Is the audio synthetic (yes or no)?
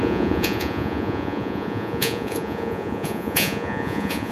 yes